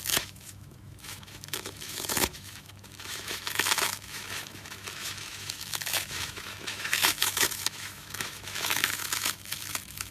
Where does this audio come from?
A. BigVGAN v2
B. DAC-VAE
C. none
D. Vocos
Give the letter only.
B